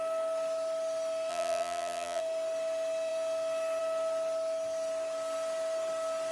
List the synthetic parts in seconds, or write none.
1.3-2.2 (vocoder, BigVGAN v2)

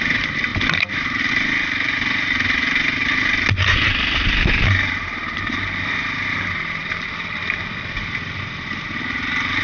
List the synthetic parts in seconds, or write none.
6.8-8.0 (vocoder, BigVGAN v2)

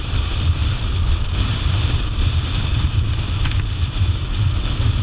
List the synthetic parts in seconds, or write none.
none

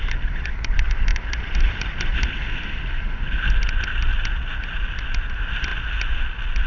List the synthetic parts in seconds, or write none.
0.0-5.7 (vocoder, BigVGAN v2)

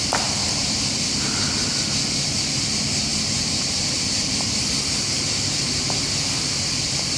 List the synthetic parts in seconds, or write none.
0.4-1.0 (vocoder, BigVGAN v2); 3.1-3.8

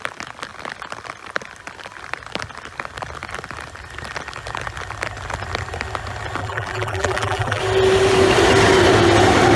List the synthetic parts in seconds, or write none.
6.4-7.6 (vocoder, BigVGAN v2)